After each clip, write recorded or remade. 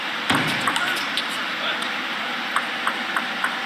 recorded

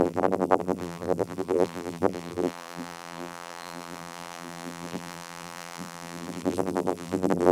remade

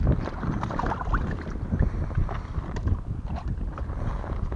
remade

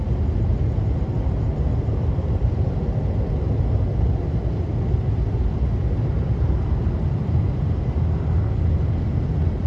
recorded